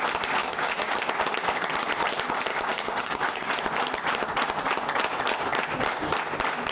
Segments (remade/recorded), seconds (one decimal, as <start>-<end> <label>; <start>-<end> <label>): 0.0-0.4 recorded; 0.4-1.0 remade; 1.0-2.5 recorded; 2.5-3.5 remade; 3.5-6.7 recorded